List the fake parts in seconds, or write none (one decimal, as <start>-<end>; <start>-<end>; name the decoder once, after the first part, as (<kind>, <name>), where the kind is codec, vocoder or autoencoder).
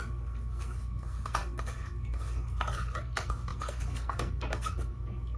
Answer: 0.0-5.4 (codec, SNAC)